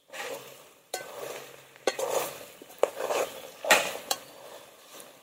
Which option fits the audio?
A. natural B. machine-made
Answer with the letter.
B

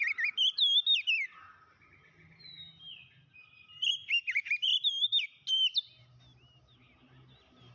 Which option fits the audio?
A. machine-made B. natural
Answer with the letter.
B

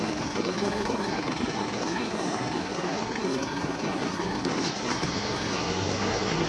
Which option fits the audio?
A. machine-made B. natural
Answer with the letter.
A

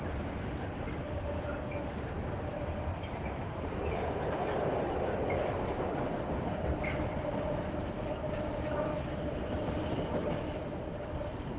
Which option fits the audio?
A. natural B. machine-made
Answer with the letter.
A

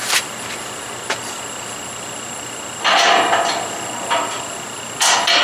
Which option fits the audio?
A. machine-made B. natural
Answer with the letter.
B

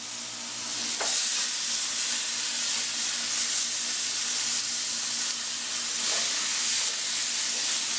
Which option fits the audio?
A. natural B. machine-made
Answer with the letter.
A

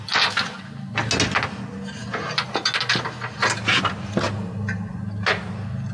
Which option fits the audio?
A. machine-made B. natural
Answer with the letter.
B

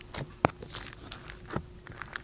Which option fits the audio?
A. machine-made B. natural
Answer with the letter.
B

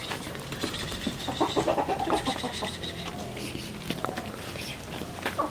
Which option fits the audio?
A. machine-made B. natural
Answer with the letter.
A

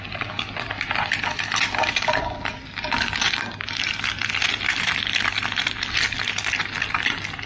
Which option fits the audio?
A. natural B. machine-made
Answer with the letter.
A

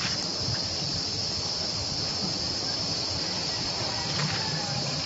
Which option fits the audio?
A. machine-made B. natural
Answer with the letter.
B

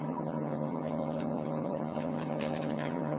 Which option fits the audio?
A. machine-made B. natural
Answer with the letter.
A